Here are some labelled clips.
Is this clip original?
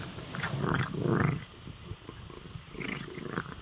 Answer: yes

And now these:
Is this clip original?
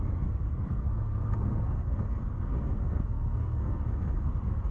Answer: no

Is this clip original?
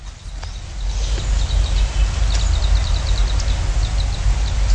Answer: yes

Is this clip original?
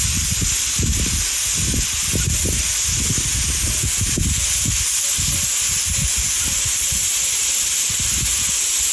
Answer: yes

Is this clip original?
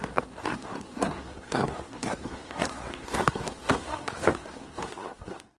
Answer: no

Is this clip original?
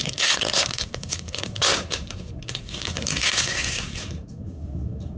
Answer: no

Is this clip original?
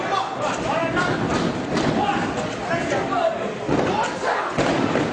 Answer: yes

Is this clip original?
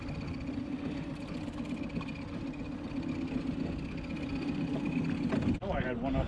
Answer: yes